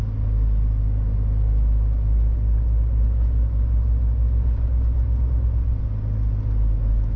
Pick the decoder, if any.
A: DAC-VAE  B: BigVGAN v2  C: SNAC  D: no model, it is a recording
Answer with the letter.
D